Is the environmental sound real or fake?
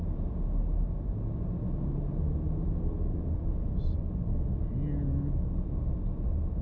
real